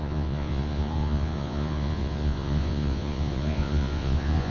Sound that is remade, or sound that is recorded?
remade